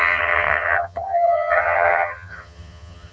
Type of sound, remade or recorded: remade